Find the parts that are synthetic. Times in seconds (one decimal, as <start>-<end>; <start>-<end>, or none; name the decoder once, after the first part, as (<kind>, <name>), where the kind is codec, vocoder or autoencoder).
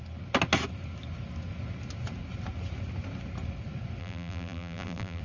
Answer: 4.0-5.2 (vocoder, BigVGAN v2)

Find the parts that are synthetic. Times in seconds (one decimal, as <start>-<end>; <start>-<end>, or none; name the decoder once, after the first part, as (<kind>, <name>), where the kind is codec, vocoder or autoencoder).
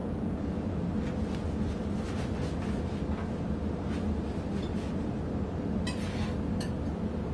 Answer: 0.0-0.8 (vocoder, Vocos)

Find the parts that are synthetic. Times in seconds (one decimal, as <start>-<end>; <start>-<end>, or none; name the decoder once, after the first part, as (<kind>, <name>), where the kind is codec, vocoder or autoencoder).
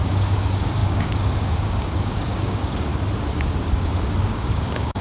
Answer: 0.0-2.9 (codec, DAC); 3.7-5.0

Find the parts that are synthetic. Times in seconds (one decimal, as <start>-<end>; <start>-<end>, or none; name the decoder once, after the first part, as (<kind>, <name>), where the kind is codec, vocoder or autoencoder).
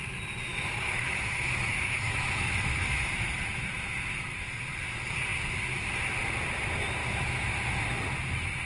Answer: 0.5-4.5 (autoencoder, DAC-VAE); 7.0-7.8